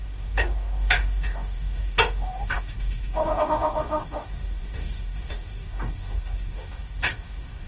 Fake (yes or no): yes